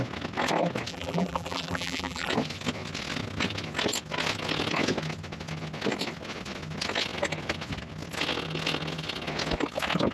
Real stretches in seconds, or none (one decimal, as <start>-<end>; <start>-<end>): 0.0-0.9; 2.3-10.1